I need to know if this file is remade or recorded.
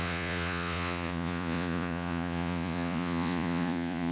remade